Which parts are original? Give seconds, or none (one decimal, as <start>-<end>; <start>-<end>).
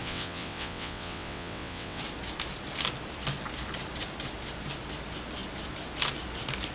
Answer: 2.0-6.7